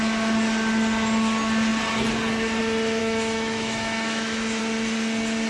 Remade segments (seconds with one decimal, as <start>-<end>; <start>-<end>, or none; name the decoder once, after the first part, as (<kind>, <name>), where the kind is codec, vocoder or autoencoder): 3.0-4.6 (autoencoder, DAC-VAE)